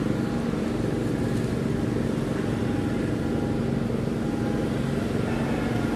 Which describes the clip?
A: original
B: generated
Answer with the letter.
A